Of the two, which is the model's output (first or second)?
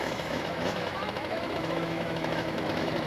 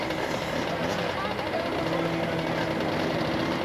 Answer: first